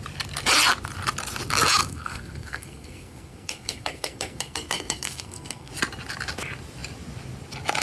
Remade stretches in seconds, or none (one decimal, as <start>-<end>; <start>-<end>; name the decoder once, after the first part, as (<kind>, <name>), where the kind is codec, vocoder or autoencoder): 1.8-5.7 (codec, SNAC)